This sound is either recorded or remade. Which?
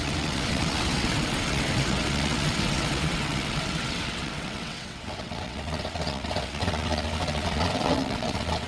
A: remade